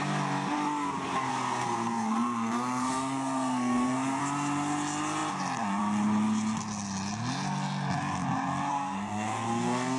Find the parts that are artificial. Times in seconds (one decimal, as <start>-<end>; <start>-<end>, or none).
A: 1.3-4.2; 8.7-10.0